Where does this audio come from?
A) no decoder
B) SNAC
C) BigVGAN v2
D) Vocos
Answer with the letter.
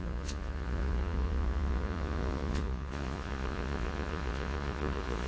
D